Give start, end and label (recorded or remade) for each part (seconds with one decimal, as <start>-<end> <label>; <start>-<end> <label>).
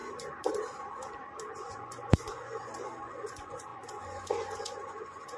0.0-1.5 recorded; 1.5-5.4 remade